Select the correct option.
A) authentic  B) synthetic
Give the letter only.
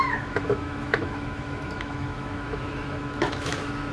B